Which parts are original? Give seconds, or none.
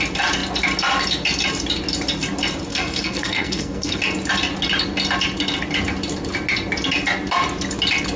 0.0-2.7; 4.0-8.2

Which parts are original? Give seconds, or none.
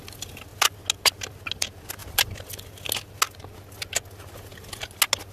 0.0-5.3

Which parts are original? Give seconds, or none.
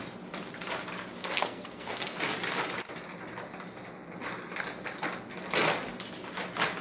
0.0-1.2; 2.2-6.8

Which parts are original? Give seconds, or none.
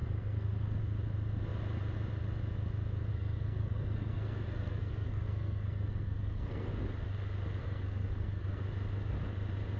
0.8-3.1; 6.7-7.6; 8.6-9.8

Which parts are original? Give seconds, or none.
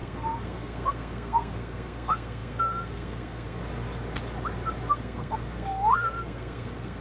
3.6-4.9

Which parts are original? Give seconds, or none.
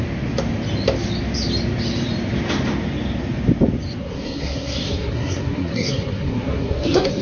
0.0-4.0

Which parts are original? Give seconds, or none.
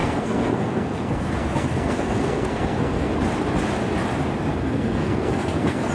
3.1-4.5